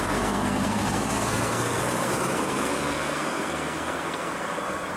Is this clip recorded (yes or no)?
no